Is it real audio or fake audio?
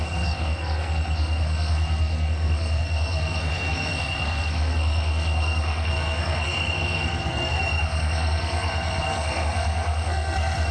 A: fake